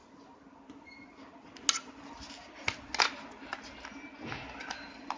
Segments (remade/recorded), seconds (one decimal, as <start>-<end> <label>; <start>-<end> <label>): 0.0-5.2 recorded